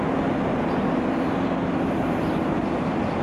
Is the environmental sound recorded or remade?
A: recorded